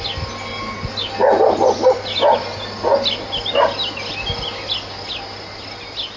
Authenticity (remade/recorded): recorded